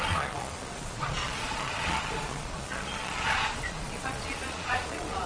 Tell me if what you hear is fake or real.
fake